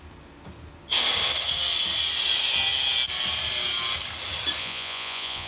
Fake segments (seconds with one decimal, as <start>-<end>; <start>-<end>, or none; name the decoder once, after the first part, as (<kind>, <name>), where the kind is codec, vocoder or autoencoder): 4.6-5.5 (vocoder, Vocos)